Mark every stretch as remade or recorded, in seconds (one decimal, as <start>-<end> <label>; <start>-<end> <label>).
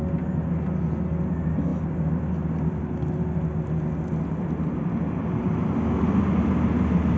0.0-7.2 recorded